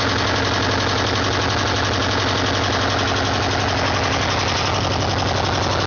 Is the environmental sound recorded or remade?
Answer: recorded